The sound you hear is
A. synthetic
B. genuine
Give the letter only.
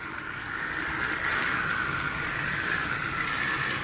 B